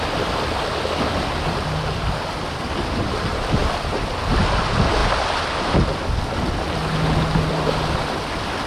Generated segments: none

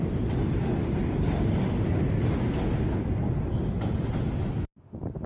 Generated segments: none

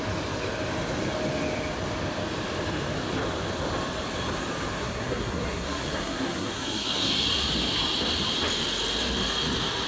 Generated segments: 4.8-7.1 (codec, SNAC)

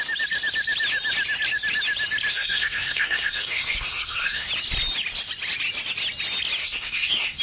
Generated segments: 2.3-4.5 (codec, SNAC); 6.6-7.4

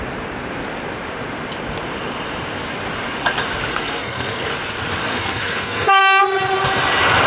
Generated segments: 3.7-4.5 (codec, SNAC); 5.0-6.0

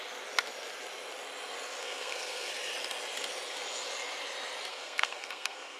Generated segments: 1.8-2.5 (codec, SNAC); 4.7-5.8

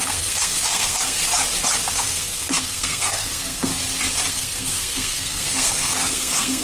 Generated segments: 0.0-1.2 (codec, SNAC); 1.9-3.7; 4.3-6.6

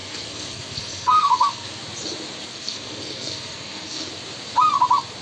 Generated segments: 0.0-1.8 (codec, SNAC); 2.5-4.1